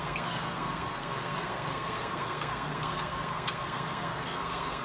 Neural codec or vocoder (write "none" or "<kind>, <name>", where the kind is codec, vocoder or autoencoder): codec, SNAC